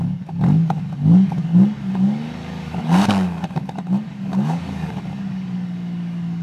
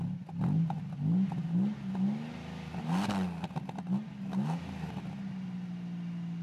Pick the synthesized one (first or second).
first